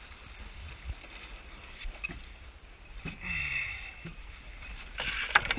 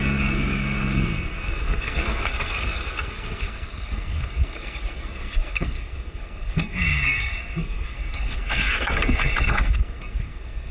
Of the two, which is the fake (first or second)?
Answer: second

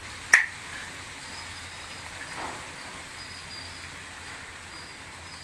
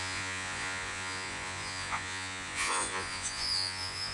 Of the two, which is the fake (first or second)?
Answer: second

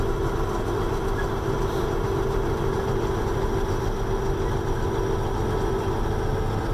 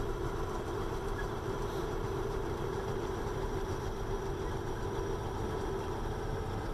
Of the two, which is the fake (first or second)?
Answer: second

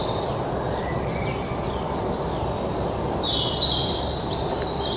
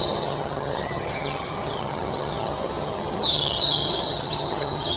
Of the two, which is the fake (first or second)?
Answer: second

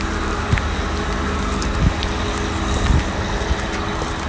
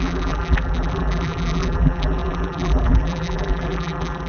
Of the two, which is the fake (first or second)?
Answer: second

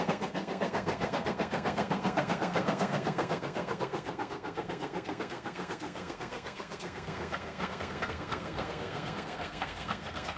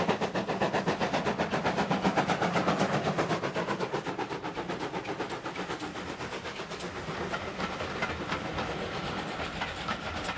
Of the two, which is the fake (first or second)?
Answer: first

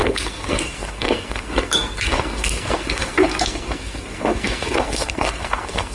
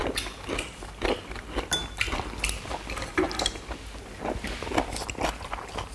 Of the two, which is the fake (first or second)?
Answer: first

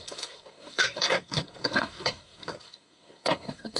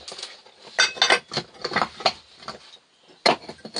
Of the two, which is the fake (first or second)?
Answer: first